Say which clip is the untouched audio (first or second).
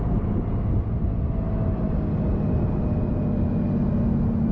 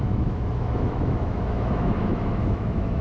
first